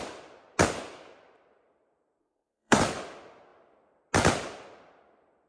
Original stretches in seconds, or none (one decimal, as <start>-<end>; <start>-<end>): 0.0-2.2; 2.8-5.5